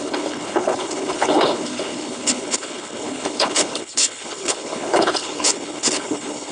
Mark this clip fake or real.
fake